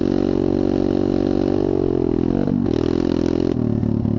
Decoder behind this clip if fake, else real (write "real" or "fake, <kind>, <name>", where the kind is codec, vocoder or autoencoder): real